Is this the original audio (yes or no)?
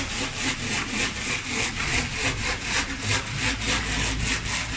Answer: yes